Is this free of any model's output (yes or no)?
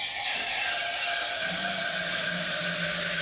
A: yes